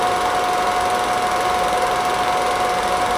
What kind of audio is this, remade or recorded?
recorded